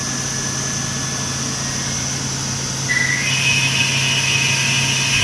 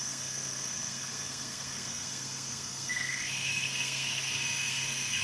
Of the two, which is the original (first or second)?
first